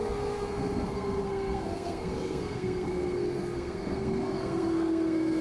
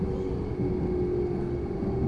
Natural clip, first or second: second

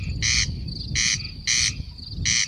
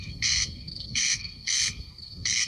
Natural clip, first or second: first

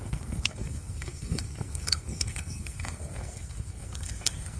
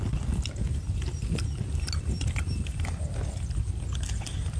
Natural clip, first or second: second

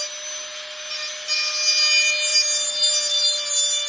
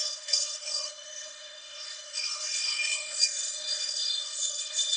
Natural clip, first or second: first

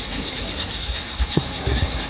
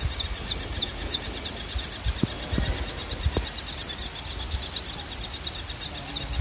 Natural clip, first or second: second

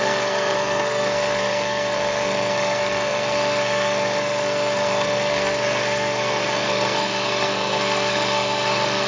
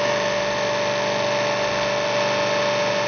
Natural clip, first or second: second